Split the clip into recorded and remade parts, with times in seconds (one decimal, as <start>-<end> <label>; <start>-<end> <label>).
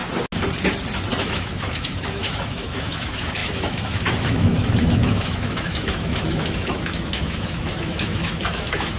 0.0-1.2 recorded; 1.2-9.0 remade